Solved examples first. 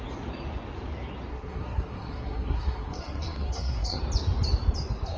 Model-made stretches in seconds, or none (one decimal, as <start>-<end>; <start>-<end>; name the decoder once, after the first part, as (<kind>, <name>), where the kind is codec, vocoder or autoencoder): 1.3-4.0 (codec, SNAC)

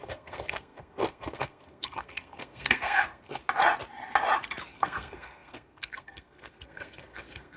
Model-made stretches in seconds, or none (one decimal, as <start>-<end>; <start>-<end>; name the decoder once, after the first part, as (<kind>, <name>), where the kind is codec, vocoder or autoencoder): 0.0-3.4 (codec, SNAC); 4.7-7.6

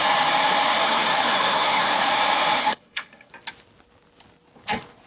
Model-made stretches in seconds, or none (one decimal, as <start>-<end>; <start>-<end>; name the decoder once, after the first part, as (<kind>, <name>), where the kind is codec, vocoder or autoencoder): 0.8-2.1 (codec, SNAC); 2.6-3.3